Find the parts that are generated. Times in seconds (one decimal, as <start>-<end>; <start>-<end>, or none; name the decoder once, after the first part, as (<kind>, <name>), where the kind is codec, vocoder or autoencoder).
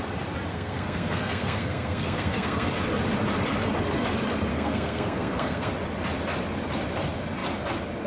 0.5-2.7 (codec, SNAC); 4.5-5.7